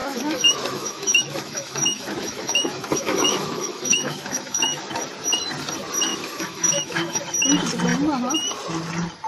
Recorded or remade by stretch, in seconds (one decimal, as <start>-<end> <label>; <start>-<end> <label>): 0.0-4.9 remade; 4.9-6.1 recorded; 6.1-7.2 remade; 7.2-9.3 recorded